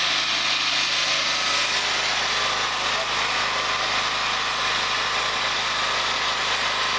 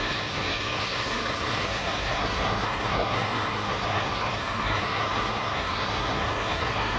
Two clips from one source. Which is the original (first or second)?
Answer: first